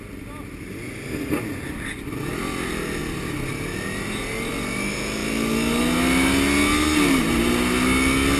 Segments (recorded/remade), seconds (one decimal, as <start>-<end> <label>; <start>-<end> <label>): 0.0-8.4 recorded